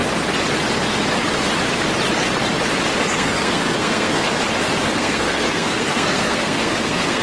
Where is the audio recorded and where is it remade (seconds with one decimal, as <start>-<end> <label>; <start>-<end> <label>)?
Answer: 0.0-3.0 recorded; 3.0-4.3 remade; 4.3-4.9 recorded; 4.9-7.2 remade